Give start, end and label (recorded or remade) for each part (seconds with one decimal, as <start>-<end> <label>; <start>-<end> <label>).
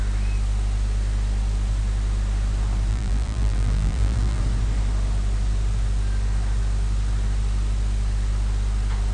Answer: 0.0-2.9 recorded; 2.9-4.4 remade; 4.4-9.1 recorded